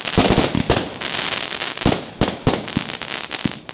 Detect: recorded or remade recorded